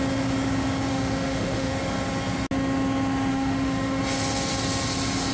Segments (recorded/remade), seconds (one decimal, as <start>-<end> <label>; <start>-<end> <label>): 0.0-0.9 recorded; 0.9-1.7 remade; 1.7-3.3 recorded; 3.3-4.0 remade; 4.0-5.3 recorded